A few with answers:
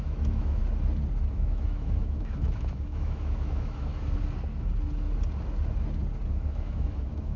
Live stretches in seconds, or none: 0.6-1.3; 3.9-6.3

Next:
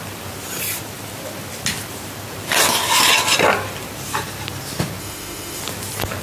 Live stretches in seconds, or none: 0.0-5.0; 5.6-6.2